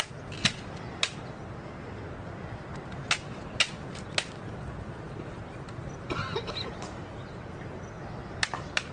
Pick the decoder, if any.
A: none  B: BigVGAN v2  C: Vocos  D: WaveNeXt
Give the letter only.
A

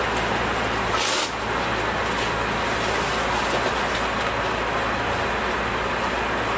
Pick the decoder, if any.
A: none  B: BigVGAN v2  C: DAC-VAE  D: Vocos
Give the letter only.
A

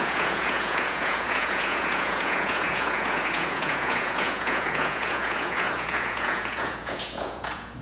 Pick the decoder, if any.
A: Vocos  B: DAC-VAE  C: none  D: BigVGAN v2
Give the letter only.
A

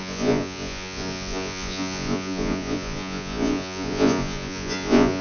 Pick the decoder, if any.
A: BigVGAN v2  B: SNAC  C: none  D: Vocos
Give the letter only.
D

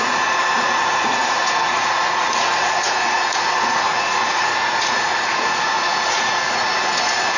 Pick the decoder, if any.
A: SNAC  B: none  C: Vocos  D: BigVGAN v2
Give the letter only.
C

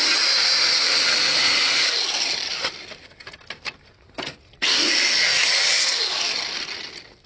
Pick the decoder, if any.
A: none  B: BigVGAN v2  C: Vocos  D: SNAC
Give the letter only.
A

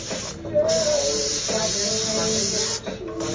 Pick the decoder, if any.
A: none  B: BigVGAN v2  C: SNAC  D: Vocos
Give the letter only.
A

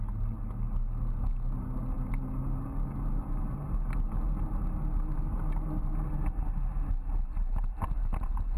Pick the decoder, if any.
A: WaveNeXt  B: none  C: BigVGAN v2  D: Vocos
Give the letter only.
B